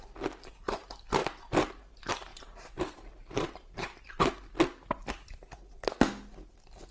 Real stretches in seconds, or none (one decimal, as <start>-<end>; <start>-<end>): 0.0-2.3; 4.1-6.9